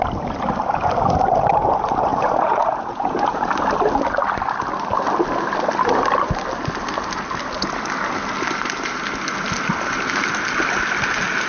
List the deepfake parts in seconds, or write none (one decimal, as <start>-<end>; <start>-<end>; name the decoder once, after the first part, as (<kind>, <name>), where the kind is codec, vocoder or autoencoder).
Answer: 2.1-3.5 (vocoder, Vocos)